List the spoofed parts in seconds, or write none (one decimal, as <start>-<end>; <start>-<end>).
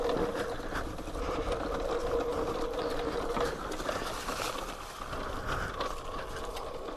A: none